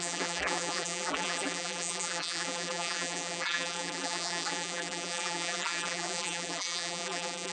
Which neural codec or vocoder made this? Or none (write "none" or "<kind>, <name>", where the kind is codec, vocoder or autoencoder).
vocoder, BigVGAN v2